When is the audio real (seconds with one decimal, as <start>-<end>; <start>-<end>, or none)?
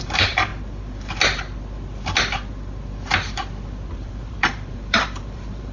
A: 0.5-3.9